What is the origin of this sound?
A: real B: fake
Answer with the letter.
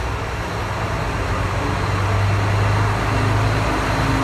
A